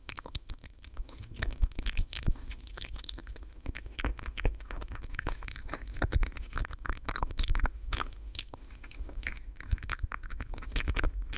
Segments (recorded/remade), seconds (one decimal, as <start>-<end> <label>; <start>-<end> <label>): 0.0-11.4 remade